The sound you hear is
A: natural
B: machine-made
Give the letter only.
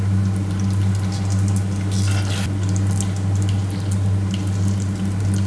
A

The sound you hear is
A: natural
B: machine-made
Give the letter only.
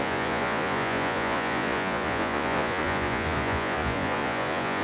B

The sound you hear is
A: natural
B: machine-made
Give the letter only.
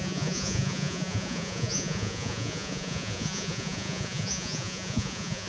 B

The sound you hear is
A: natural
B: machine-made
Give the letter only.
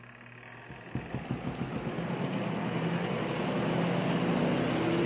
A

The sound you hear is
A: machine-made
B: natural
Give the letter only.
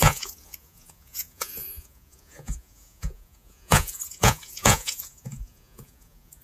A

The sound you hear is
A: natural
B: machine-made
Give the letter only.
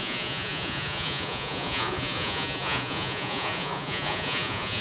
B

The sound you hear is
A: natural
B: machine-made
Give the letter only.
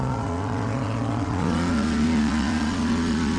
B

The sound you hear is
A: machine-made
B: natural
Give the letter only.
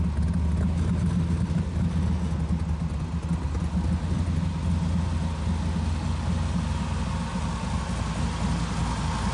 B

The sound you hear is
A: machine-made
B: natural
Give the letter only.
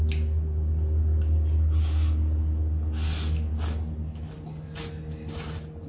B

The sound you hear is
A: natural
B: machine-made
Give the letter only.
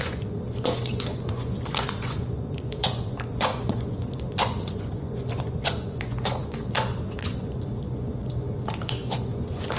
B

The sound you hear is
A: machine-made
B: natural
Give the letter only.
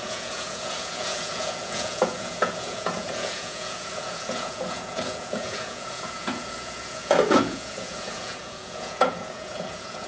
A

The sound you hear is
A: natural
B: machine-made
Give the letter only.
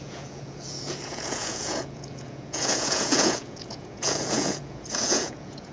B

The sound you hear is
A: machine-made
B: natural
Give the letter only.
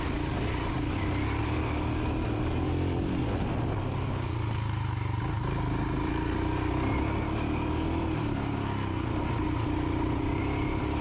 B